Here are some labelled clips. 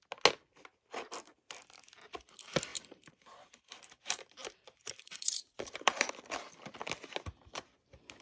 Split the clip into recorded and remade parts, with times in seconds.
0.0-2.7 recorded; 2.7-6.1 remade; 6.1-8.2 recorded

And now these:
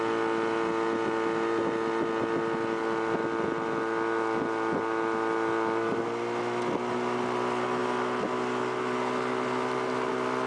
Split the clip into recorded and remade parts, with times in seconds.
0.0-10.5 recorded

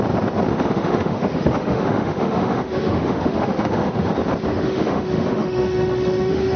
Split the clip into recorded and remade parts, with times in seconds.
0.0-0.5 recorded; 0.5-4.1 remade; 4.1-4.5 recorded; 4.5-6.6 remade

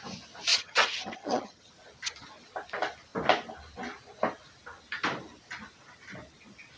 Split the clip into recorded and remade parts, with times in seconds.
0.0-0.5 recorded; 0.5-1.7 remade; 1.7-6.8 recorded

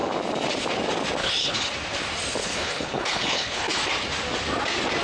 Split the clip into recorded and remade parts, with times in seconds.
0.0-1.2 recorded; 1.2-1.7 remade; 1.7-2.4 recorded; 2.4-3.8 remade; 3.8-5.0 recorded

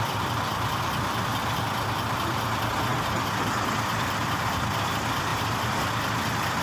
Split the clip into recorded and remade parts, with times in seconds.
0.0-5.3 remade; 5.3-6.6 recorded

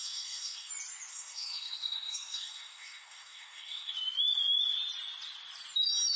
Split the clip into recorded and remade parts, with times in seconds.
0.0-0.7 remade; 0.7-1.1 recorded; 1.1-3.9 remade; 3.9-6.2 recorded